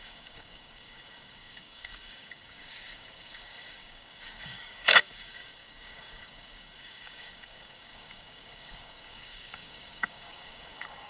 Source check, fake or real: fake